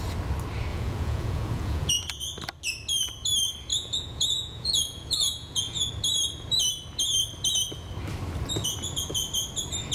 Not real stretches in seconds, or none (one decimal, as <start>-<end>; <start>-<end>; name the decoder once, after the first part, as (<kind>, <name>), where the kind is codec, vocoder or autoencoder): 0.7-2.2 (vocoder, Vocos); 3.7-5.9